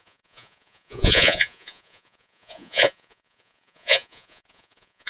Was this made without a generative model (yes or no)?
no